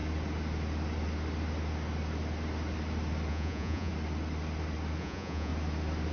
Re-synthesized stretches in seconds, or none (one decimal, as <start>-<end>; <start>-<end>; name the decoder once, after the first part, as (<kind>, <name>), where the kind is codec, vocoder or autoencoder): 3.3-3.9 (vocoder, Vocos); 5.0-5.5